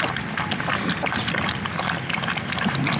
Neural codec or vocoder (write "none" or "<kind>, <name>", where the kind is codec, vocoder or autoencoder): none